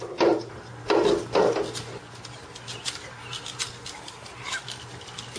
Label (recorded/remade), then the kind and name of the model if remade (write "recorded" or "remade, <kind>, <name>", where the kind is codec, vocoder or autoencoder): recorded